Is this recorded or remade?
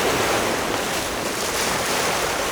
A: recorded